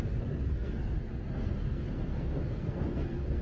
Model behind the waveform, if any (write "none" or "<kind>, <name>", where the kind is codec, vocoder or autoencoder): codec, SNAC